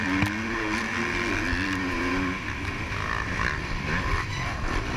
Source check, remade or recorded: recorded